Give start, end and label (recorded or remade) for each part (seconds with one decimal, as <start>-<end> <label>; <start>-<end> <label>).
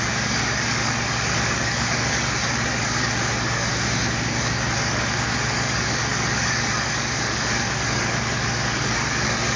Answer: 0.0-3.7 remade; 3.7-4.3 recorded; 4.3-9.6 remade